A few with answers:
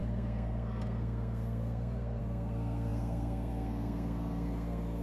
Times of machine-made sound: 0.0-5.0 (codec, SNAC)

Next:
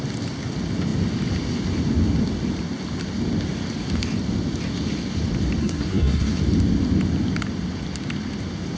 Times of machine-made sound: 5.6-6.4 (codec, SNAC)

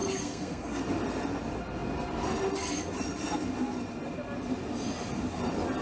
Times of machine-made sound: 0.0-0.8 (codec, SNAC)

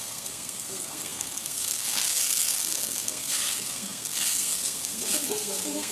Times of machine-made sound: 0.0-5.9 (codec, SNAC)

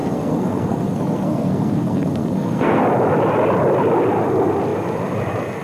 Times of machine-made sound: 0.0-2.8 (codec, SNAC)

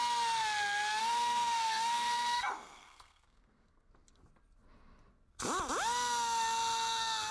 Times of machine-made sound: 1.0-3.9 (codec, SNAC)

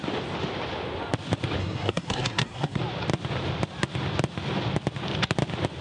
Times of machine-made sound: 1.6-2.8 (codec, SNAC)

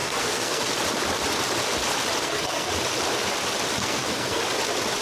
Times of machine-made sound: 0.0-0.6 (codec, SNAC); 2.2-2.7; 3.8-4.4